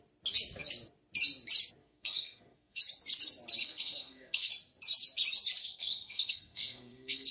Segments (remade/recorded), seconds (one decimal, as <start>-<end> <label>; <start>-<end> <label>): 0.0-1.8 recorded; 1.8-2.8 remade; 2.8-3.6 recorded; 3.6-4.5 remade; 4.5-5.6 recorded; 5.6-7.3 remade